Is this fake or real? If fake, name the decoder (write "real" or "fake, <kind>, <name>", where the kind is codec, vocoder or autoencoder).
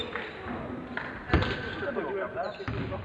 real